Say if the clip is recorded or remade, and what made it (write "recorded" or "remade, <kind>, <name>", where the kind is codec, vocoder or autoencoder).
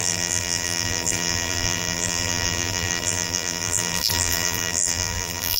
remade, vocoder, BigVGAN v2